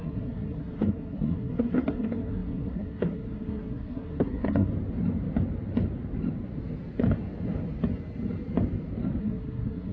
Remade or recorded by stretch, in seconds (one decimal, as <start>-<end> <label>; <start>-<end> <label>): 0.0-4.7 remade; 4.7-9.2 recorded; 9.2-9.9 remade